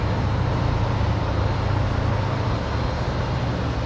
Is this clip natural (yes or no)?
yes